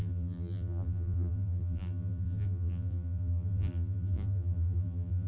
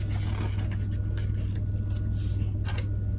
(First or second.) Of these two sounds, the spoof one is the first